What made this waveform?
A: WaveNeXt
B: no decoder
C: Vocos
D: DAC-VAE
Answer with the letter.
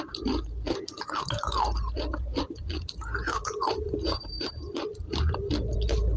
B